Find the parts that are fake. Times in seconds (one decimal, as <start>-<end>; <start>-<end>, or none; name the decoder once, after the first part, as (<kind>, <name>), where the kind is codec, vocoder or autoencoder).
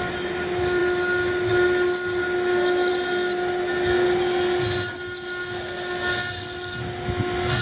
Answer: none